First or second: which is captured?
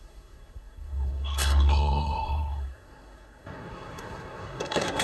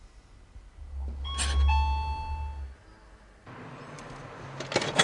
second